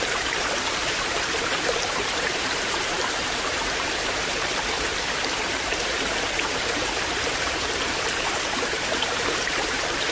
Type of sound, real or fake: fake